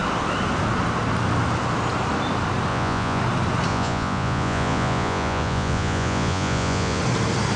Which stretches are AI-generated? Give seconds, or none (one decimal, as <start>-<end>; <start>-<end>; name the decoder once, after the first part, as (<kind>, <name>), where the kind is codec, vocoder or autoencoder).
2.7-3.2 (vocoder, Vocos); 3.7-7.0